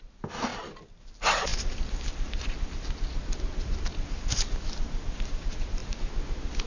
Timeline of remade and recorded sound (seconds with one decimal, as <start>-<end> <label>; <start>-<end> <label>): 0.0-6.7 recorded